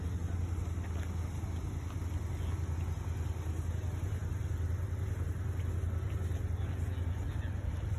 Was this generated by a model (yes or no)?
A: no